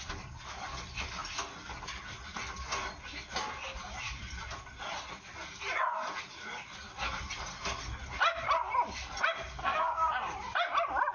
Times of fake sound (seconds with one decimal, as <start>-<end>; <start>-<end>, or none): 9.6-10.1